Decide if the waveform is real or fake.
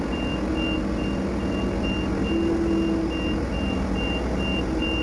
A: real